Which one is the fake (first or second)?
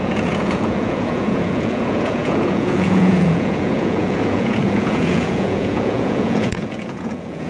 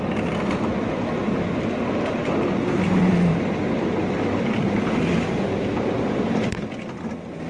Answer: first